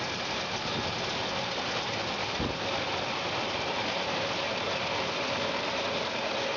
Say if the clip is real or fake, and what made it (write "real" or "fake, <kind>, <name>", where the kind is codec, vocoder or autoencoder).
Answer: real